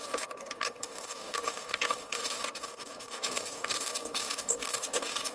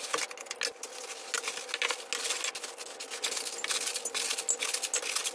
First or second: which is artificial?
first